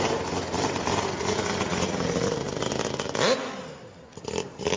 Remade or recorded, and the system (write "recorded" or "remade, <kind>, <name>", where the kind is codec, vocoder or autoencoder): recorded